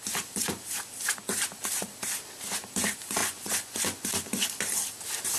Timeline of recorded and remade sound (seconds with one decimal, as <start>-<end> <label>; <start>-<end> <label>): 0.0-3.2 recorded; 3.2-4.5 remade; 4.5-5.4 recorded